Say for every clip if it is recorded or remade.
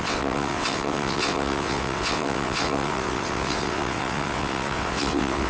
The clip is remade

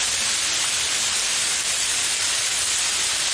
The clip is recorded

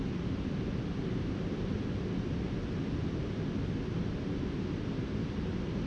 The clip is recorded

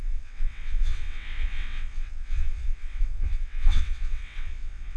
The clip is remade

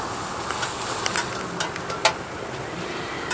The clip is recorded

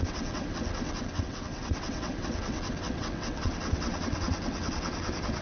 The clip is remade